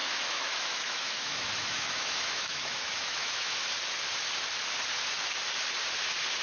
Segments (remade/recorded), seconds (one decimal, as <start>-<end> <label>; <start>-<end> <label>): 0.0-3.6 remade; 3.6-6.4 recorded

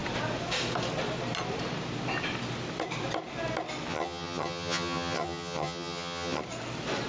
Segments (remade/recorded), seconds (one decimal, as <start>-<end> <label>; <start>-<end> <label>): 0.0-3.9 recorded; 3.9-6.4 remade; 6.4-7.1 recorded